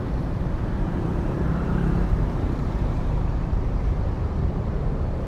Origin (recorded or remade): remade